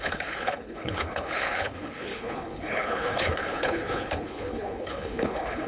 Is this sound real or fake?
fake